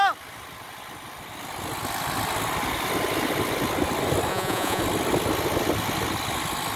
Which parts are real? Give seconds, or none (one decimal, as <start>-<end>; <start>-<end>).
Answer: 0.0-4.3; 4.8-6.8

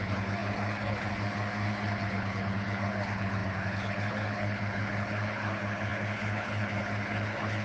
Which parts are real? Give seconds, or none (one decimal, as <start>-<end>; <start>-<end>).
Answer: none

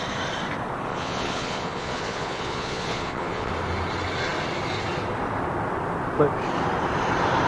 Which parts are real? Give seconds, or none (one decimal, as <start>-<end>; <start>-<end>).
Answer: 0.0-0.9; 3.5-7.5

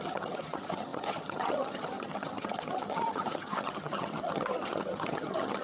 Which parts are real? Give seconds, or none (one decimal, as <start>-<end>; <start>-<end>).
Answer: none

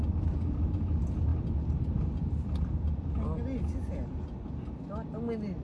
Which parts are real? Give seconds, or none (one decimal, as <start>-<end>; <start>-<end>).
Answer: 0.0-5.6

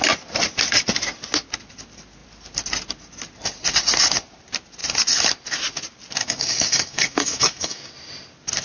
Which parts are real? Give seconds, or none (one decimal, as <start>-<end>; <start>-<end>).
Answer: 0.0-6.2; 7.9-8.6